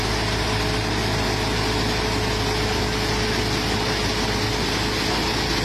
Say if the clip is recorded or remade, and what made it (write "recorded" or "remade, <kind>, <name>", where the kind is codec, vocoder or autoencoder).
recorded